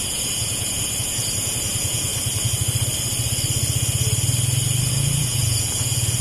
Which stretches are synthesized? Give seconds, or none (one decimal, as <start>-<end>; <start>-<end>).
0.0-2.1; 4.9-6.2